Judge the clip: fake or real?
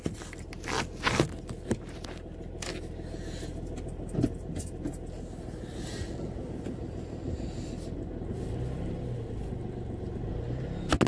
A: real